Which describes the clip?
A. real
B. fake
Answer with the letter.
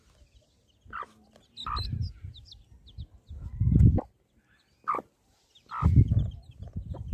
A